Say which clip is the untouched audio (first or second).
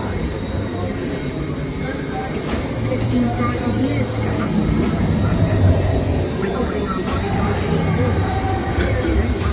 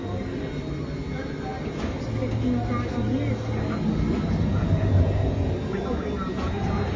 second